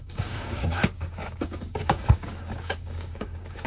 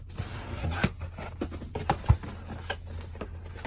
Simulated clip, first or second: first